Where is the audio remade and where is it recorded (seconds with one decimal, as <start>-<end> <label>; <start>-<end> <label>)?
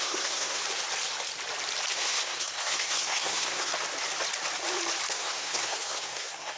0.0-0.6 remade; 0.6-1.9 recorded; 1.9-3.7 remade; 3.7-5.1 recorded; 5.1-6.6 remade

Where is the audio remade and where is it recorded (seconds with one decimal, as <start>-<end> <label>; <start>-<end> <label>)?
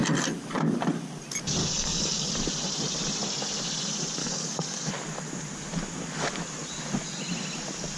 0.0-1.6 recorded; 1.6-2.3 remade; 2.3-4.2 recorded; 4.2-4.9 remade; 4.9-8.0 recorded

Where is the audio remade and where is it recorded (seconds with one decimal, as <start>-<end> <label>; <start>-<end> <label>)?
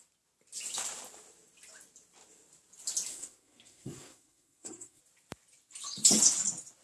0.0-3.1 recorded; 3.1-5.0 remade; 5.0-6.8 recorded